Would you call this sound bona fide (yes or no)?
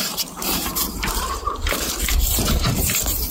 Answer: no